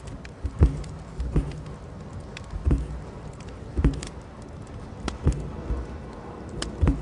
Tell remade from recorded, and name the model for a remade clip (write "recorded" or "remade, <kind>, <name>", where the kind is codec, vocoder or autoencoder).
recorded